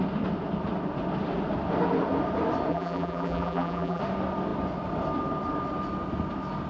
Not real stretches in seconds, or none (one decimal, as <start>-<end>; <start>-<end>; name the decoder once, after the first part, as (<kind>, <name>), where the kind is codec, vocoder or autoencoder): 2.7-4.0 (vocoder, BigVGAN v2)